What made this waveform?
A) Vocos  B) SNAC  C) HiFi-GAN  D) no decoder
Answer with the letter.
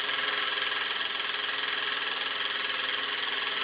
D